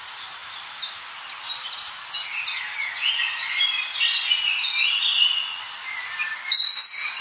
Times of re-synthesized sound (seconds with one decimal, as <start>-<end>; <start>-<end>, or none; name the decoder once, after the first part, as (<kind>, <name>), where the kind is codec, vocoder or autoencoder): none